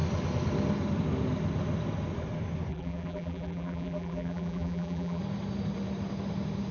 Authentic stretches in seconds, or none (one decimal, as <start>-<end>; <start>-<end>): 0.0-2.7; 5.2-6.7